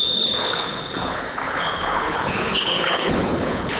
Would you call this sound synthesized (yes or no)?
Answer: yes